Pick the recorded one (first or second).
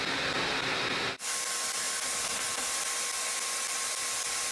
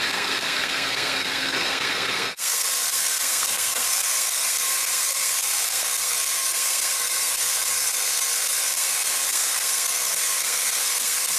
first